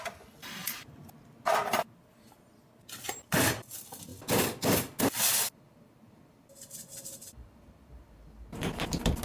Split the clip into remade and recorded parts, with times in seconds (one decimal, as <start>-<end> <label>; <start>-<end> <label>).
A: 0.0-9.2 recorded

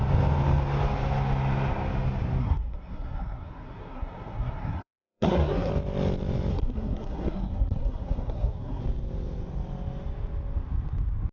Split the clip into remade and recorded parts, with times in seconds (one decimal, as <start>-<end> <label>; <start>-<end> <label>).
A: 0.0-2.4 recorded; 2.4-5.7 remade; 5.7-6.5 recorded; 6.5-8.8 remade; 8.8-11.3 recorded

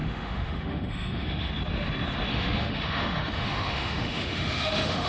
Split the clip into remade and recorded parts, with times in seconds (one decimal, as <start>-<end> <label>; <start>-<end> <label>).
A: 0.0-1.5 remade; 1.5-2.3 recorded; 2.3-5.1 remade